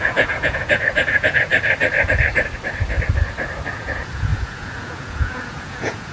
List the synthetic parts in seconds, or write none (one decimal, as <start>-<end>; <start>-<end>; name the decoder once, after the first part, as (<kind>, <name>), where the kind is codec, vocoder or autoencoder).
0.0-1.5 (vocoder, Vocos); 3.7-6.1